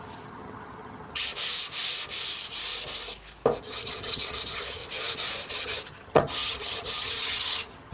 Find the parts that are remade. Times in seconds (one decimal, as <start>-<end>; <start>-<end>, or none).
0.0-1.3; 3.6-4.8; 5.5-7.9